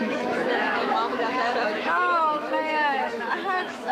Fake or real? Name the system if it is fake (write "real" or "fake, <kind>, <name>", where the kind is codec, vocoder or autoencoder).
fake, autoencoder, DAC-VAE